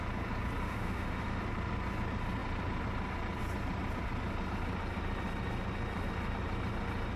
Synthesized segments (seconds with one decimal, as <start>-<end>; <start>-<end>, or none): 0.6-1.4